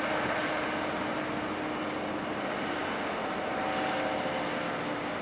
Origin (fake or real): real